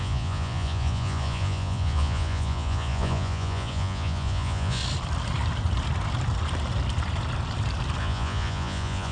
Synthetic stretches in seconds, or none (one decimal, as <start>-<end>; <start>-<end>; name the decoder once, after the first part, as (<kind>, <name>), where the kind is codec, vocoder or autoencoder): 0.0-4.8 (vocoder, Vocos); 8.0-9.1